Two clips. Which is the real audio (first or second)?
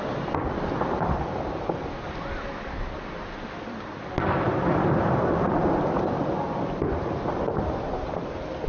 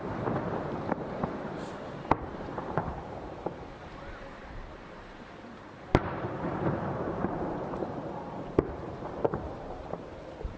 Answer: first